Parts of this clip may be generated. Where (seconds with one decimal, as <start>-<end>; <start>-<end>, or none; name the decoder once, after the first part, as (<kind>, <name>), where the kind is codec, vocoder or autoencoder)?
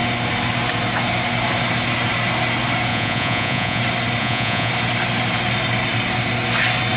2.9-3.8 (vocoder, Vocos); 4.2-4.7